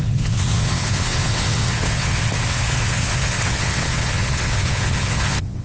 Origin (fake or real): fake